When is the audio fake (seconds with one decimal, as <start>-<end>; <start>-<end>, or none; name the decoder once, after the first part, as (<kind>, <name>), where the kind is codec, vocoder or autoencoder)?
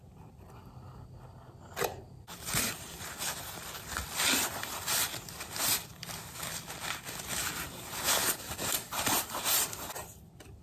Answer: 1.9-5.2 (vocoder, BigVGAN v2); 5.9-6.7; 8.2-9.9